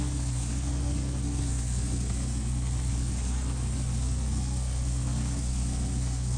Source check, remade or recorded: remade